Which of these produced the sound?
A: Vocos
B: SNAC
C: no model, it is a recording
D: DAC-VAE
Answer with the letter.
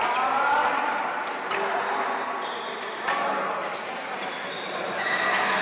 C